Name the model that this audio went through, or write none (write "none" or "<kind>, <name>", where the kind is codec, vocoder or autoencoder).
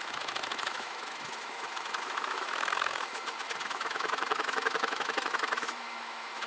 autoencoder, DAC-VAE